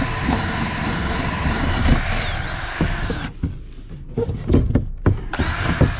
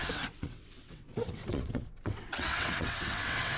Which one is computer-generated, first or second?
second